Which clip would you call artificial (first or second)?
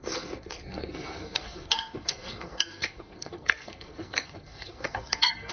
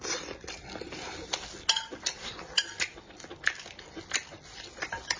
first